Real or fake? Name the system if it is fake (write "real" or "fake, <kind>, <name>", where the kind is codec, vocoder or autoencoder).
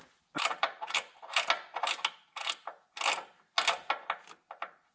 real